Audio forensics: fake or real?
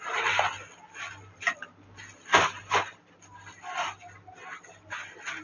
real